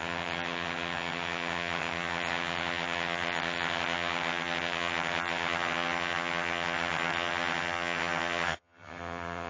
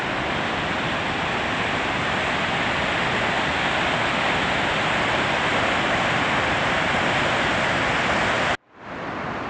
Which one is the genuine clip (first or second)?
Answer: second